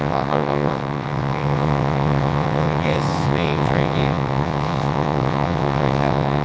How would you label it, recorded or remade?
remade